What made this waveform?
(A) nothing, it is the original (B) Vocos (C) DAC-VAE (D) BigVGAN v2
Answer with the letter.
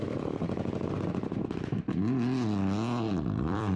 D